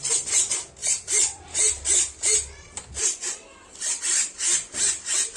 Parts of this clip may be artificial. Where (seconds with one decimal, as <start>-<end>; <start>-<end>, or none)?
none